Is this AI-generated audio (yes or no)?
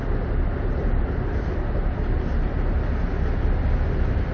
no